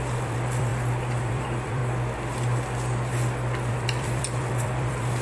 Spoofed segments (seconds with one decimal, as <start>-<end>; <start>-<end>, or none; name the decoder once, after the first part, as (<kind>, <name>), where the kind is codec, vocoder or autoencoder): 0.0-1.8 (vocoder, BigVGAN v2); 3.7-5.2